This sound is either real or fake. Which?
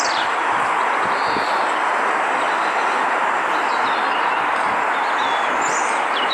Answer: real